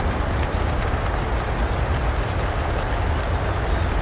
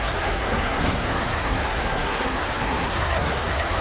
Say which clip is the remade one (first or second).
second